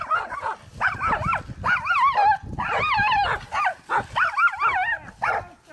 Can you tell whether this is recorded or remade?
recorded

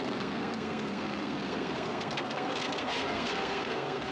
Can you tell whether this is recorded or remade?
remade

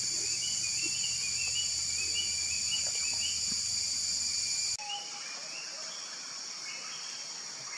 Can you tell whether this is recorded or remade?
recorded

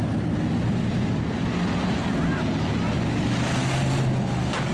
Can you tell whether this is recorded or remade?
recorded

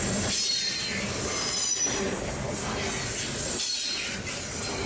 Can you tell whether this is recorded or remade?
recorded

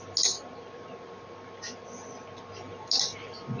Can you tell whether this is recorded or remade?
recorded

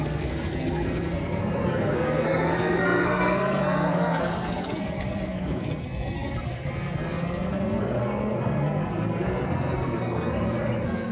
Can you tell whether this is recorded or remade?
remade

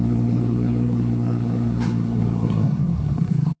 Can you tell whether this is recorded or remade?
remade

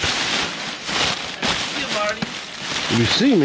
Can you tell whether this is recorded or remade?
recorded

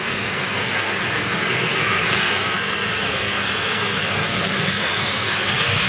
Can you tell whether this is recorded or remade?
remade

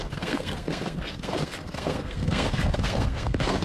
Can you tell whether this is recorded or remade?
remade